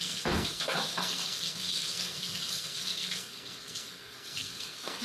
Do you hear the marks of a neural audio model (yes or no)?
yes